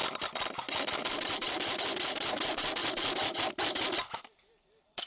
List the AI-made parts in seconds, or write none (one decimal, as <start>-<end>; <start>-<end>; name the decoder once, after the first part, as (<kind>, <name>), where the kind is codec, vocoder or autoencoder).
1.1-2.8 (vocoder, BigVGAN v2); 4.2-5.1